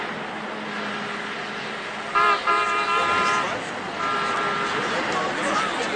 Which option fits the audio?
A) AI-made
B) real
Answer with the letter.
B